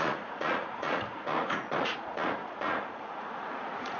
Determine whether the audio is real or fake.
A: fake